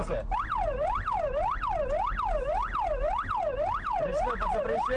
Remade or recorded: recorded